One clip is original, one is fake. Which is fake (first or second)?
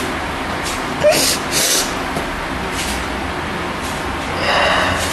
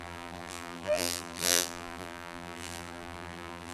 second